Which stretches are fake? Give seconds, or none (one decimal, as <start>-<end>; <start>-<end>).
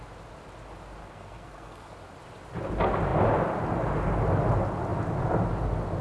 1.0-1.9